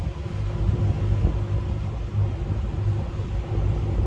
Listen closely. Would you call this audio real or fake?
real